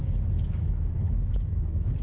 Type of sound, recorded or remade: remade